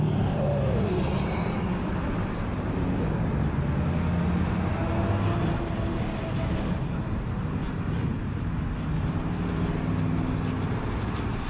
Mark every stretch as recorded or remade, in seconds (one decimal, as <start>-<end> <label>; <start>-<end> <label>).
0.0-11.5 recorded